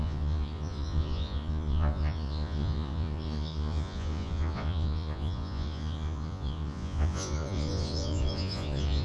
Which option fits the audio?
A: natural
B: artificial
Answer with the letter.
B